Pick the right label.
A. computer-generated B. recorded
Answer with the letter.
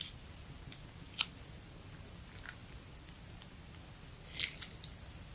B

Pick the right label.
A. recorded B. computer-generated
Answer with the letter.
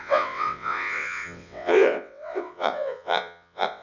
B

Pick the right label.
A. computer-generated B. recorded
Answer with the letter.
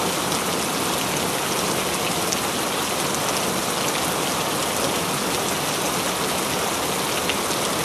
B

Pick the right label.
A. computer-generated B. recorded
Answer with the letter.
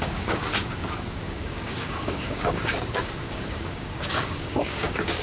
A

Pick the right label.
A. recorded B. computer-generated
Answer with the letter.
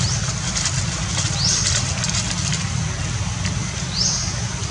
A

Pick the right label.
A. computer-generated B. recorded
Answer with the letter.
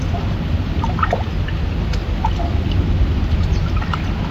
B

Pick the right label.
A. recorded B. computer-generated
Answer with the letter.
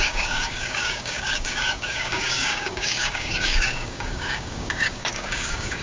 B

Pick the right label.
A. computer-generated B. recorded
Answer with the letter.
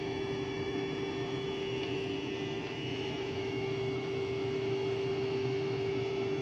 A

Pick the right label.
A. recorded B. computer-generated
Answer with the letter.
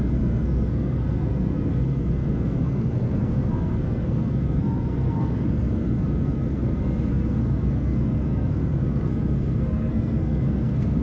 B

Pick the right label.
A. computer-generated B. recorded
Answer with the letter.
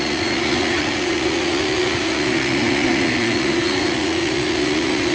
A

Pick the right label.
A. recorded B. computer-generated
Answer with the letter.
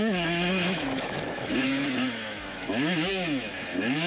B